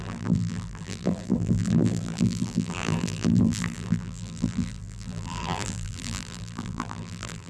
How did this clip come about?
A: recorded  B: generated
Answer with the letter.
B